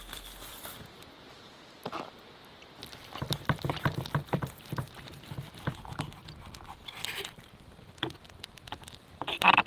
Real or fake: fake